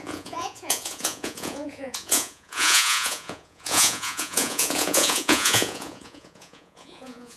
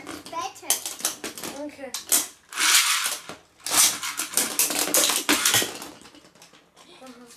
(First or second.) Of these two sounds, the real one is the second